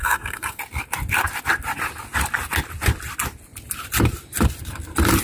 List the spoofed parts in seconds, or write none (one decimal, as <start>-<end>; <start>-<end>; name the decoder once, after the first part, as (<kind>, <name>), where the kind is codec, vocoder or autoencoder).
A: 0.0-0.6 (codec, SNAC)